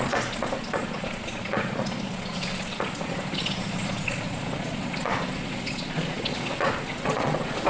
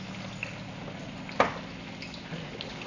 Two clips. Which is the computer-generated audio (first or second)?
first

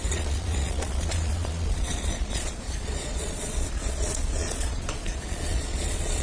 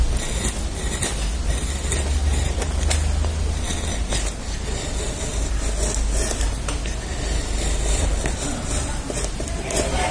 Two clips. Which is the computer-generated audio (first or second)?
first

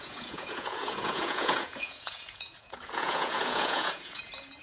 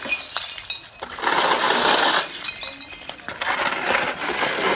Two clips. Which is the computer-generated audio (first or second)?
first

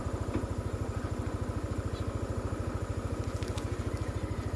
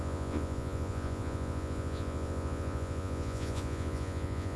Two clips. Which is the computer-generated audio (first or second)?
second